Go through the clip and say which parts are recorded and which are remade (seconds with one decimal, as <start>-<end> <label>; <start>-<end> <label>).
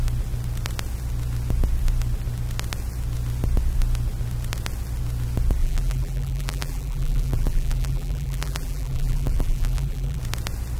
0.0-5.6 recorded; 5.6-10.2 remade; 10.2-10.8 recorded